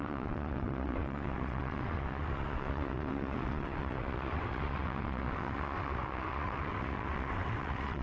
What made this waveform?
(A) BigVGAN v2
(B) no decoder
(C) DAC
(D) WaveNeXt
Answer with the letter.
D